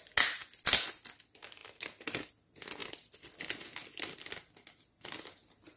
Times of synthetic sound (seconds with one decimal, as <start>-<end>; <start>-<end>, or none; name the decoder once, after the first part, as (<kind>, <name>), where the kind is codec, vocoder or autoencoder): none

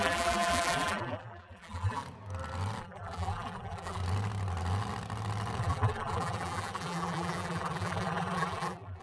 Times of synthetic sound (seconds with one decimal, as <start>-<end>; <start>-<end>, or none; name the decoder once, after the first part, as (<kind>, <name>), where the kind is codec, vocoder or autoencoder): 0.0-2.0 (vocoder, BigVGAN v2); 2.8-4.0; 5.6-9.0

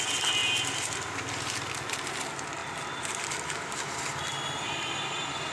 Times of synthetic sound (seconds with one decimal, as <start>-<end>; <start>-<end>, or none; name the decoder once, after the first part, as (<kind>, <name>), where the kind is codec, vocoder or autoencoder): 2.6-3.3 (vocoder, BigVGAN v2)

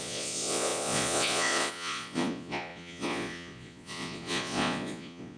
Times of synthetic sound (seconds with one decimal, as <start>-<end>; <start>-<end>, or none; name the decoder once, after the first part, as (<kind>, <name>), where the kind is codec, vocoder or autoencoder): 0.0-5.4 (vocoder, Vocos)

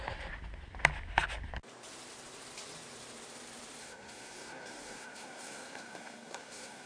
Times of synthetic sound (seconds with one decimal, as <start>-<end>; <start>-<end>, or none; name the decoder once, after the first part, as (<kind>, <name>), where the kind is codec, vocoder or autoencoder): 3.8-6.9 (codec, SNAC)